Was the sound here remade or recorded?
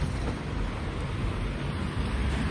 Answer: recorded